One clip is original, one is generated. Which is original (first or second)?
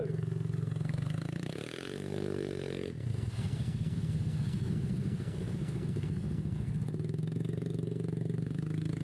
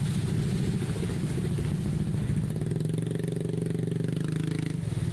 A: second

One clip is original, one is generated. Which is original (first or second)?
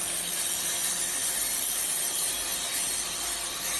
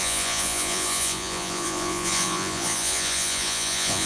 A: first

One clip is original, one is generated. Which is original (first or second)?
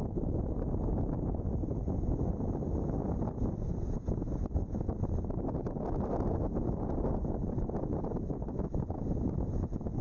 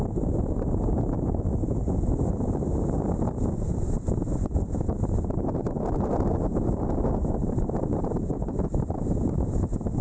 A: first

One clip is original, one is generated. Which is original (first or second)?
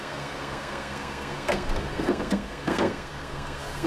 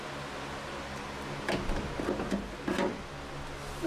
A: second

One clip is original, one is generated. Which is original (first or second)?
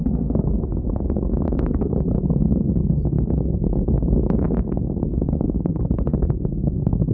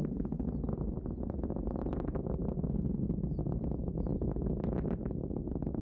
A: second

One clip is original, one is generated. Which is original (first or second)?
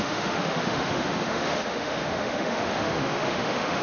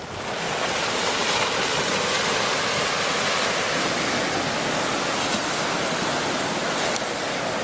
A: second